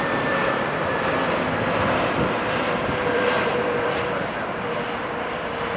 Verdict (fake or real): fake